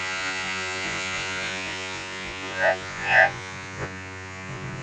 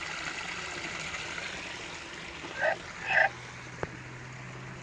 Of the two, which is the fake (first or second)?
first